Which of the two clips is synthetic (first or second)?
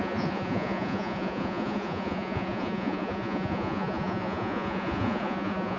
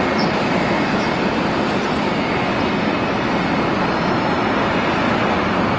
first